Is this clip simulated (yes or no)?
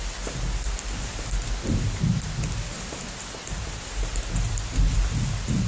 no